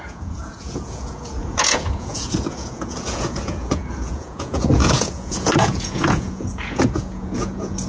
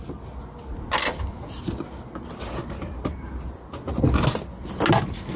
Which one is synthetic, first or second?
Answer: first